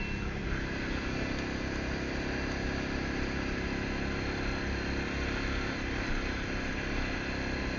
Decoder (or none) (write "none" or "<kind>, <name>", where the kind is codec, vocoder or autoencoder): none